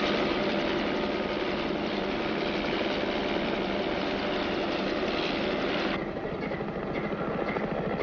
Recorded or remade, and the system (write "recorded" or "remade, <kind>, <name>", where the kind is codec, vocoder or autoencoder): recorded